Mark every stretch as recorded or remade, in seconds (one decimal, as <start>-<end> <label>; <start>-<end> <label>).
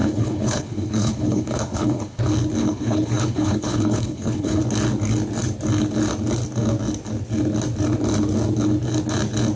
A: 0.0-2.2 remade; 2.2-2.6 recorded; 2.6-4.6 remade; 4.6-9.6 recorded